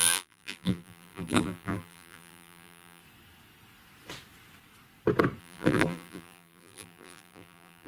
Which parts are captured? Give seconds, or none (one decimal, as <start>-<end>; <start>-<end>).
3.0-5.4